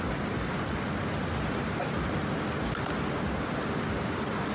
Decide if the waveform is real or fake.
real